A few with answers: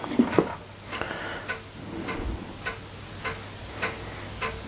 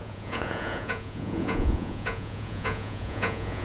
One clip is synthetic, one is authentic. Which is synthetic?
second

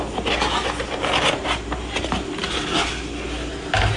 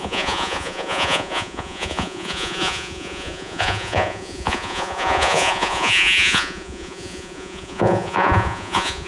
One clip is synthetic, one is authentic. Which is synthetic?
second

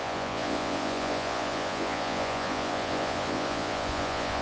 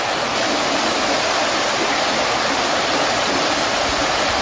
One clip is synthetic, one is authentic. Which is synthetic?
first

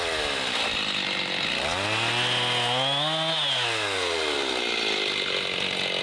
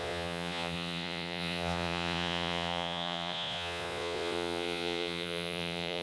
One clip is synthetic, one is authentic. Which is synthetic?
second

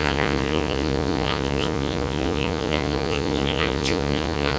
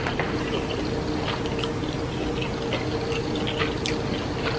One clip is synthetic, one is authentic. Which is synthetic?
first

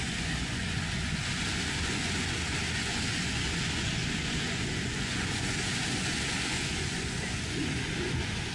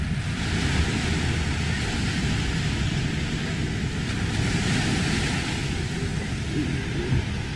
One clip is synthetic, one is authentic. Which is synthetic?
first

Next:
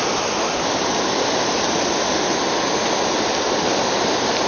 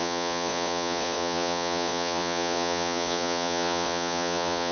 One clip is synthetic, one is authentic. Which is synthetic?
second